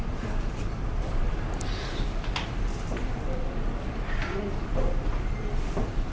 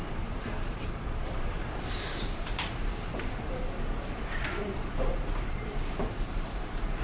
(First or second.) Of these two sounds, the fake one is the second